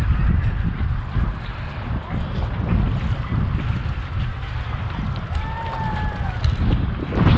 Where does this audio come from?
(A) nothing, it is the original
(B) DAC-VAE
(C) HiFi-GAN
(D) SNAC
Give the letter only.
A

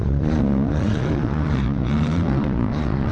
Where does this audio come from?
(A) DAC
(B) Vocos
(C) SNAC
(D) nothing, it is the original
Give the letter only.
B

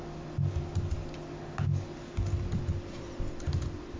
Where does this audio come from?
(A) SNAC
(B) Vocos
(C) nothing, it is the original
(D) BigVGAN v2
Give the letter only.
C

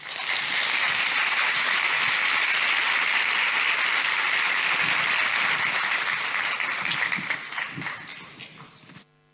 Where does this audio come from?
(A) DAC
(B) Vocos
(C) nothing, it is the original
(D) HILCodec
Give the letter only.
C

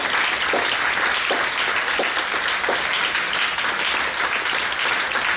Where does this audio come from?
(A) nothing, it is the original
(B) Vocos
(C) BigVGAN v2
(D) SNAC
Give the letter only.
A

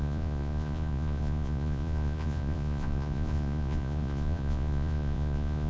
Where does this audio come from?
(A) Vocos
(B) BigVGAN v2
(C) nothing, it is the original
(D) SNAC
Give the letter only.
A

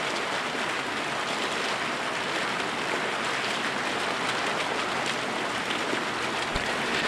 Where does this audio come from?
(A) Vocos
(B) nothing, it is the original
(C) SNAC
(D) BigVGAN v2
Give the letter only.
B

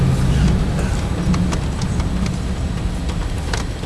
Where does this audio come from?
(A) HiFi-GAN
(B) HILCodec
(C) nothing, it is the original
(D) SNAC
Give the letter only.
C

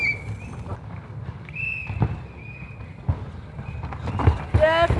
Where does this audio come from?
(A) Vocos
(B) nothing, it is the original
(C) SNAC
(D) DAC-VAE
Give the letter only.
B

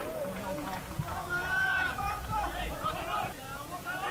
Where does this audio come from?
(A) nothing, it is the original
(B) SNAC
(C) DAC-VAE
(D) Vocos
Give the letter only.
D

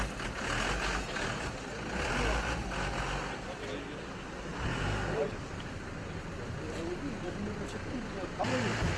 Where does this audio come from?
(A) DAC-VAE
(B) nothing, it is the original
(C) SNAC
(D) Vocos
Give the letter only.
B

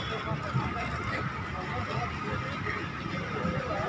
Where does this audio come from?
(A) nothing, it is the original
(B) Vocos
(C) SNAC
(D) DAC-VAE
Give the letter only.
A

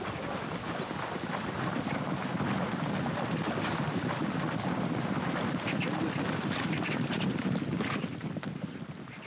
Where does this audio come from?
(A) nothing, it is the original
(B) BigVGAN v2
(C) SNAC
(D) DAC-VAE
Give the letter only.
A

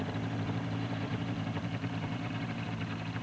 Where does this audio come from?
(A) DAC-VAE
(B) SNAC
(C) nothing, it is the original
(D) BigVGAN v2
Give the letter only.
D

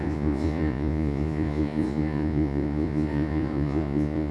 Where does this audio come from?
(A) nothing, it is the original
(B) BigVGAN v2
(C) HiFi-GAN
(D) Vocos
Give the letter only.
D